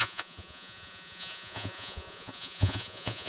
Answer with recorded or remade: remade